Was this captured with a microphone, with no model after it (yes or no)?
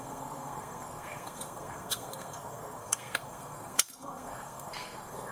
no